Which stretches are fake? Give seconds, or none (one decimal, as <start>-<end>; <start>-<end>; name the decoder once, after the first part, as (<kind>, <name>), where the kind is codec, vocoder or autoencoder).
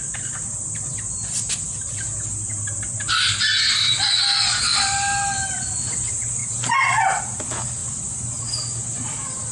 none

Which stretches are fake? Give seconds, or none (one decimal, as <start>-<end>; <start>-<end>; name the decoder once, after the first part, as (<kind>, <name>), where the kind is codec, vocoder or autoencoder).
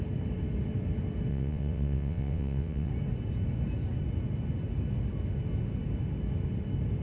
1.3-2.9 (vocoder, WaveNeXt)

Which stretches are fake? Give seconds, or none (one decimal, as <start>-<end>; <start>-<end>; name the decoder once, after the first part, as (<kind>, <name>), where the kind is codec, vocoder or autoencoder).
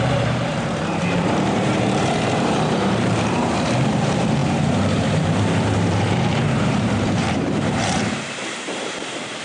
0.0-9.4 (vocoder, BigVGAN v2)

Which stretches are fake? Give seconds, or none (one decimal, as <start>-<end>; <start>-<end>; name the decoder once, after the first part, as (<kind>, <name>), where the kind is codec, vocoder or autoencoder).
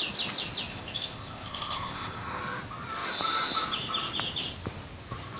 0.7-2.4 (codec, ZipCodec)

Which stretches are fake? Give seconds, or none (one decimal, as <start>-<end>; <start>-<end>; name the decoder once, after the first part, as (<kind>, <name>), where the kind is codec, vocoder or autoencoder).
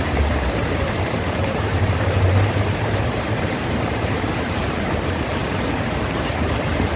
0.0-7.0 (vocoder, BigVGAN v2)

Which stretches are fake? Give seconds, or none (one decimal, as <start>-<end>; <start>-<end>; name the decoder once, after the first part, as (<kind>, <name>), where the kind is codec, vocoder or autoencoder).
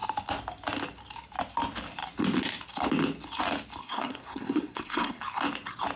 3.8-5.2 (codec, SNAC)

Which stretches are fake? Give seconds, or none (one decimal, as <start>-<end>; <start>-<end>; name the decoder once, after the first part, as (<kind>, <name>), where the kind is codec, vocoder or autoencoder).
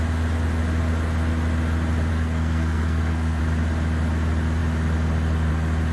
2.1-3.4 (codec, SNAC)